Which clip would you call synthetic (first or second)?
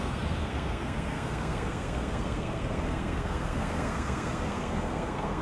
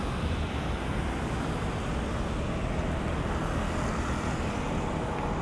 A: first